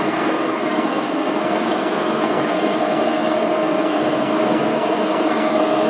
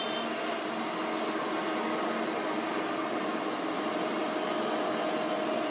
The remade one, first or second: first